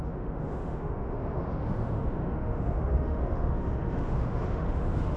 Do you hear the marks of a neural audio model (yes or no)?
yes